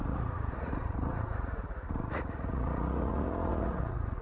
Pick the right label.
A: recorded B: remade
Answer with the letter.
B